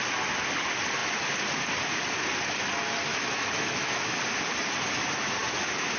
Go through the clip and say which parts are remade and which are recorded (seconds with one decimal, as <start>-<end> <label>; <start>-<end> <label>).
0.0-3.1 recorded; 3.1-4.2 remade; 4.2-6.0 recorded